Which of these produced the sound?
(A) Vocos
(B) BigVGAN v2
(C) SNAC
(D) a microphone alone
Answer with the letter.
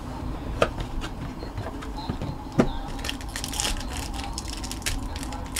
D